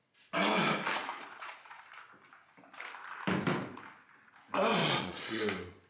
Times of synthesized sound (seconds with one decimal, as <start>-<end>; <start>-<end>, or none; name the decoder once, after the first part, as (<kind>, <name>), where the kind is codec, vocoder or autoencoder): 1.1-1.8 (vocoder, Vocos); 4.8-5.4